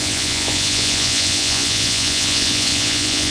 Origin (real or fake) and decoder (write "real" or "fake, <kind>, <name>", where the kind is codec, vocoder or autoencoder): fake, vocoder, Vocos